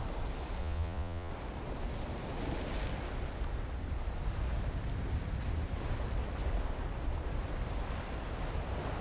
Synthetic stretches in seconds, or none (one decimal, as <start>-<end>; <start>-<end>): 0.6-1.3